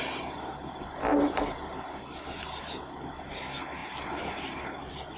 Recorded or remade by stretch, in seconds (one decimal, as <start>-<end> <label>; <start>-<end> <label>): 0.0-5.2 recorded